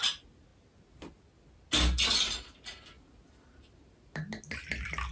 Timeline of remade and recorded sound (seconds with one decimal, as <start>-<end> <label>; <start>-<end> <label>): 0.0-5.1 recorded